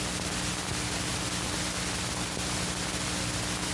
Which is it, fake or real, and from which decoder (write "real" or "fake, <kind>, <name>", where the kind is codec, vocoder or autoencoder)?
real